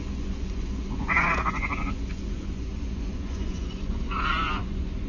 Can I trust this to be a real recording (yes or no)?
no